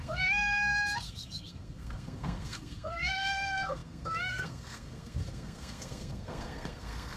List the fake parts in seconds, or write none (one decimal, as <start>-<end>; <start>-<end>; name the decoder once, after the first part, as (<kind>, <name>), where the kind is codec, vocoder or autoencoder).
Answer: 0.0-7.2 (codec, SNAC)